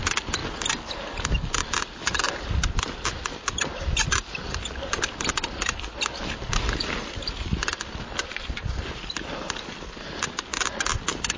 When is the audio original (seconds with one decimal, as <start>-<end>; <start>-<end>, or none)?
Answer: 0.4-1.8